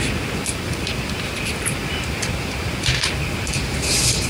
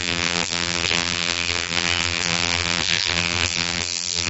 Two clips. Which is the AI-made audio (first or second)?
second